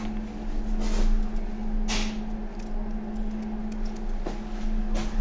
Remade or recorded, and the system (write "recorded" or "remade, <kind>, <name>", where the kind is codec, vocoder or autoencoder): recorded